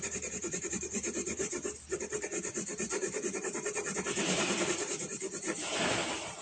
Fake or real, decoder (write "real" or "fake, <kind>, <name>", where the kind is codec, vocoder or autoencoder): fake, vocoder, BigVGAN v2